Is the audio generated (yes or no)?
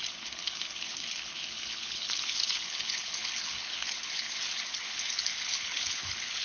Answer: yes